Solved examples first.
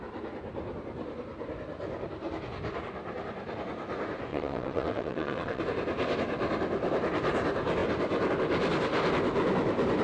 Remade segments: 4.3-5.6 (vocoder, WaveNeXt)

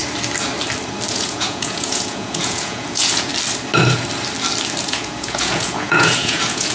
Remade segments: 1.1-3.3 (vocoder, Vocos); 4.8-6.7

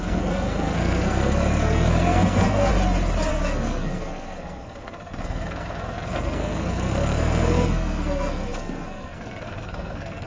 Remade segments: 0.0-2.7 (codec, SNAC); 3.3-10.3

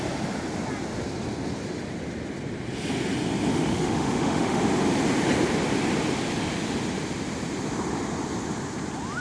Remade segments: 3.5-4.6 (autoencoder, DAC-VAE)

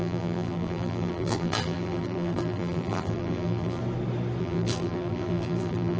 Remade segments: 0.0-3.8 (vocoder, BigVGAN v2); 4.4-6.0

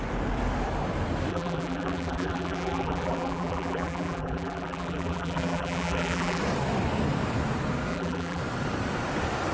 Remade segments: 1.3-6.4 (vocoder, BigVGAN v2); 7.9-8.4